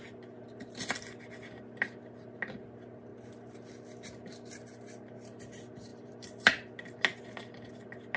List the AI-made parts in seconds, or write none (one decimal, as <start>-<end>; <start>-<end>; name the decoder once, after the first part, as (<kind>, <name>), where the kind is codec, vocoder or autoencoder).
none